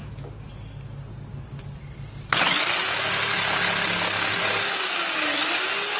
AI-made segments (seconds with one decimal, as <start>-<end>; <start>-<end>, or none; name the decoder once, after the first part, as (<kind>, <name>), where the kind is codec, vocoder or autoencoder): none